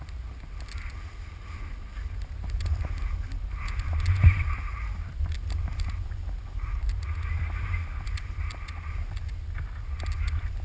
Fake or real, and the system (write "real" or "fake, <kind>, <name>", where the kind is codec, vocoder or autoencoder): real